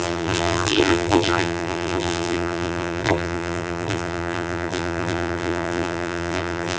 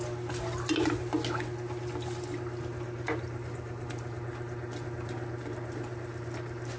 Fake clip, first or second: first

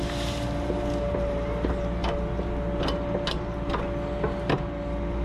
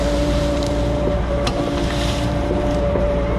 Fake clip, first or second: second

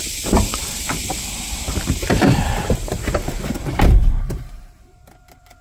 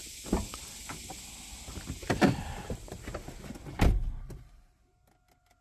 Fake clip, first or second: first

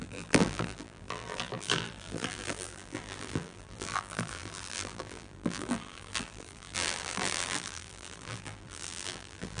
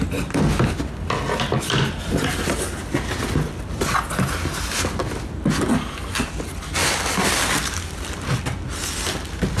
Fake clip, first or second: first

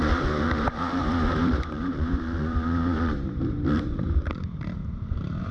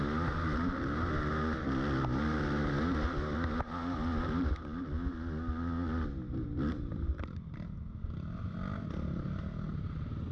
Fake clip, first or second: first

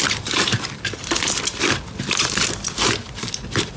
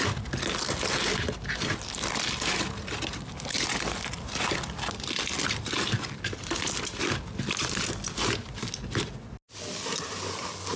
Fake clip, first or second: first